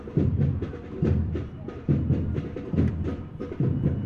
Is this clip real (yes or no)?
no